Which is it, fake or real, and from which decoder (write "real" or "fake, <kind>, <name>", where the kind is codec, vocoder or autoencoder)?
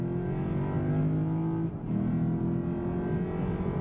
real